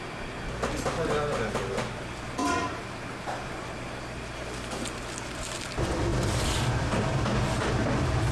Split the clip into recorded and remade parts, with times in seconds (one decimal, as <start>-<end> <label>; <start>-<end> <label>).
0.0-2.4 recorded; 2.4-3.5 remade; 3.5-6.1 recorded; 6.1-7.1 remade; 7.1-8.3 recorded